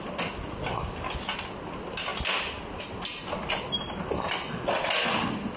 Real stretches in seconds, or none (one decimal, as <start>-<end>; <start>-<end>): 0.0-5.6